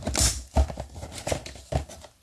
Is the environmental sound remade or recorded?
recorded